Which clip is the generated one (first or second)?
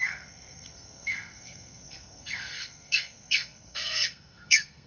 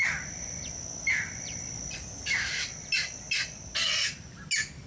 first